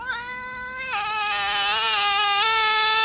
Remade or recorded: recorded